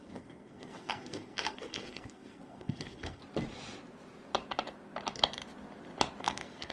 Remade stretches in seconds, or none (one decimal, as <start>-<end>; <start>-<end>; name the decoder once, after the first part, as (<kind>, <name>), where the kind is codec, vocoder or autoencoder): 0.0-3.2 (codec, SNAC); 6.2-6.7